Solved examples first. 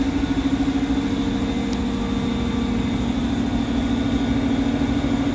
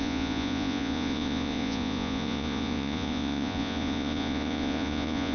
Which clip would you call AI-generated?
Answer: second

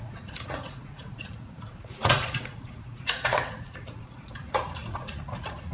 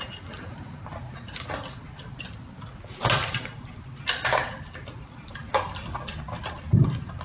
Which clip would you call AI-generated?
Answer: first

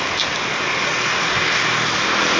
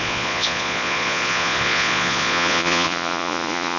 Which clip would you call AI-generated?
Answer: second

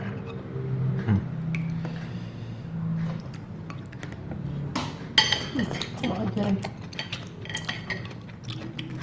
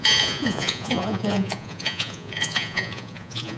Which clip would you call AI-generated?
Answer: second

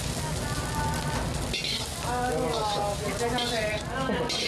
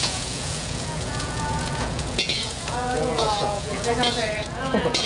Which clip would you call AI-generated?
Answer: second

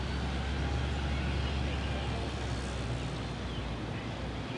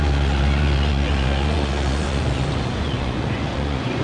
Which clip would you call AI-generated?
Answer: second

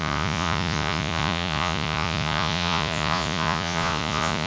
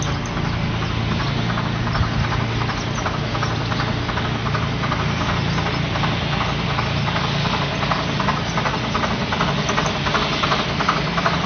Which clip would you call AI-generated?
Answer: first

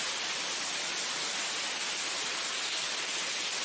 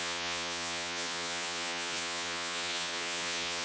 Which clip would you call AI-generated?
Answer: second